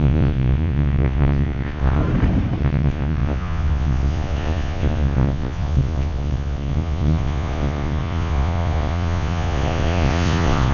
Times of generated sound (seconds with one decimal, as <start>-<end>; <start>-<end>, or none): 0.0-2.0; 2.6-10.7